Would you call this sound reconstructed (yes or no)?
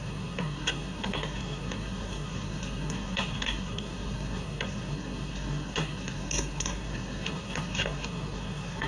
yes